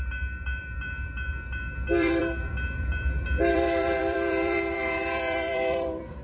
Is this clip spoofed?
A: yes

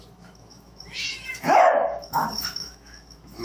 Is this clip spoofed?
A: yes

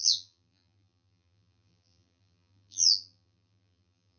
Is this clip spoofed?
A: yes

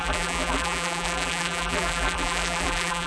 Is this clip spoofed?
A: yes